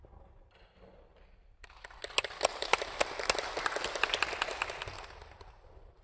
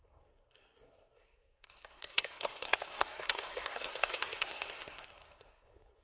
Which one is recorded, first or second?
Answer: first